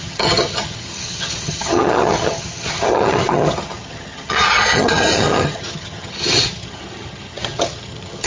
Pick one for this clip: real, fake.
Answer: fake